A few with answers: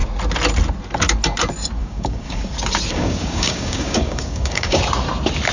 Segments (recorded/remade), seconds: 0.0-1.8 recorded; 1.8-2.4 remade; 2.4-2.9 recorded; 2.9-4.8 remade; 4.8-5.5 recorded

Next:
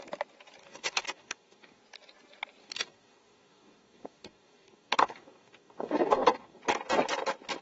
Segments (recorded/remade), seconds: 0.0-0.6 recorded; 0.6-1.8 remade; 1.8-2.6 recorded; 2.6-6.6 remade; 6.6-7.6 recorded